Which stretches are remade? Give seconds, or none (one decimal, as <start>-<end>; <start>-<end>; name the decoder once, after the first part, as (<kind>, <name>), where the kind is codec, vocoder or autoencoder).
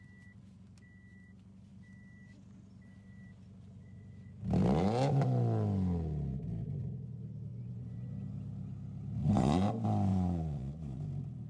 7.5-8.1 (vocoder, Vocos); 9.2-9.7; 10.1-11.0